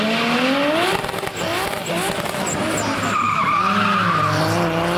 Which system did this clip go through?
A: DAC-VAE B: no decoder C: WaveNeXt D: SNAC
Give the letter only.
B